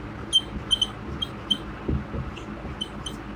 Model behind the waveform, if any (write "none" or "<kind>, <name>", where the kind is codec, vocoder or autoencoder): none